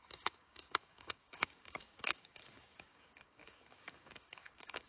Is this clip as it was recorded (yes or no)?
no